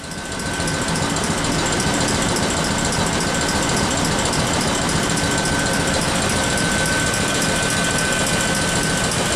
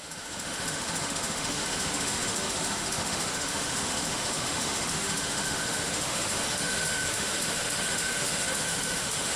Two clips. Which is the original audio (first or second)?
first